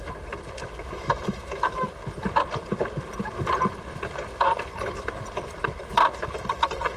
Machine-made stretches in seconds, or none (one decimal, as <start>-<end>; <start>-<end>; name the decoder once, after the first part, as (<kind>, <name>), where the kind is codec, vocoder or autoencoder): 0.6-1.9 (autoencoder, DAC-VAE)